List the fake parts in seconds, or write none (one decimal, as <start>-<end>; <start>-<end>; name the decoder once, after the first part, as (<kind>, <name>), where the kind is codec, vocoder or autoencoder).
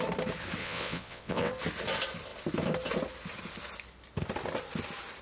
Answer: 0.6-1.5 (vocoder, WaveNeXt)